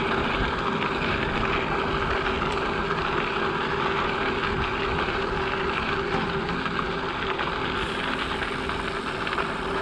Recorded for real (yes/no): yes